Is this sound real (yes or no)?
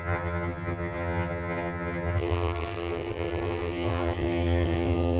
no